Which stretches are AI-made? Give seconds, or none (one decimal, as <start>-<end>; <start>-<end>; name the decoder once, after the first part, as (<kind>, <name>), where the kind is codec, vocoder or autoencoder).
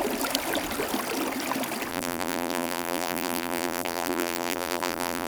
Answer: 1.9-5.3 (vocoder, BigVGAN v2)